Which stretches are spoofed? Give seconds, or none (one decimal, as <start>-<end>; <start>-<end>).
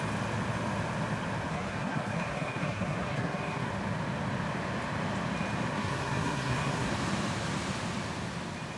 1.5-3.7; 5.7-6.9